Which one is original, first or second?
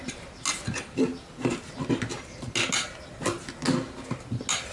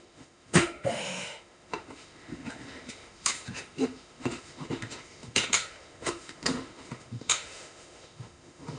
first